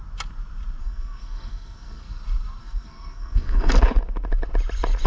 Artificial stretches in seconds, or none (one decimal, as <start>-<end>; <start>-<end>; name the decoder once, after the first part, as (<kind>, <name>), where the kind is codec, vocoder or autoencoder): 0.8-2.2 (codec, SNAC); 2.6-3.7